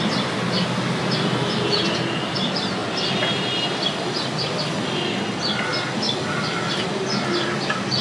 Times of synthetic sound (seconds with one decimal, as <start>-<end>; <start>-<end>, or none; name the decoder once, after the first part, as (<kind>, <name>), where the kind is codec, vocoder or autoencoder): none